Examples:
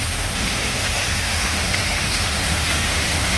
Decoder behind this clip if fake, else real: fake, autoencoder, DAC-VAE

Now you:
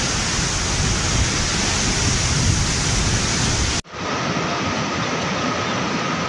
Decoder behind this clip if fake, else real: real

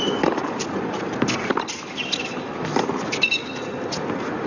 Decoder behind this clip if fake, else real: real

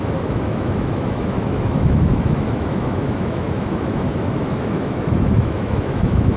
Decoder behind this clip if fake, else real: fake, autoencoder, DAC-VAE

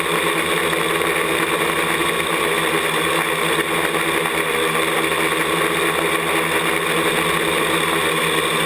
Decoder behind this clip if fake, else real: real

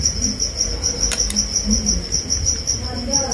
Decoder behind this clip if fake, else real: real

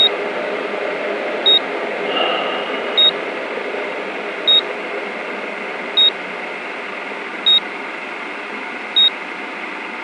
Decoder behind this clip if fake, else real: real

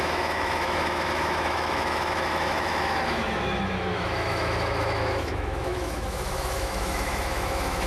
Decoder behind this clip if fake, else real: fake, autoencoder, DAC-VAE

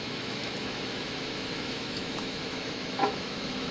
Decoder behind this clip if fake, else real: fake, autoencoder, DAC-VAE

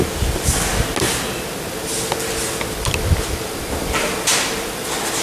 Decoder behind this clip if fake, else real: real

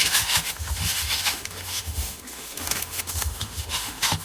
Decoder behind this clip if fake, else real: fake, autoencoder, DAC-VAE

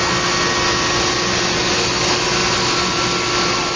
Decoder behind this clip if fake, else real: real